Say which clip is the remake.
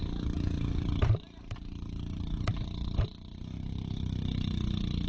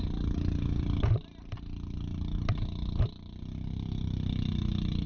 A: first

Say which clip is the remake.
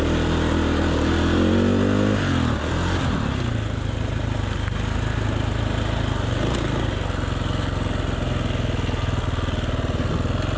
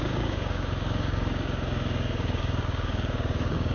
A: second